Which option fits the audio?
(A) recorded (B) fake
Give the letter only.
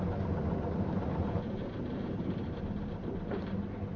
B